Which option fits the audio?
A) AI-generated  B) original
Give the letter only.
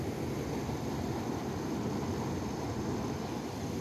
B